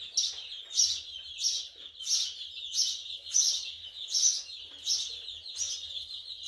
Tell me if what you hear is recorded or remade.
recorded